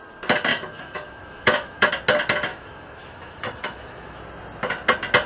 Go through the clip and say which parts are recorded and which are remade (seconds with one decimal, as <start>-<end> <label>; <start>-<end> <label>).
0.0-0.5 recorded; 0.5-1.9 remade; 1.9-2.5 recorded; 2.5-4.2 remade; 4.2-5.3 recorded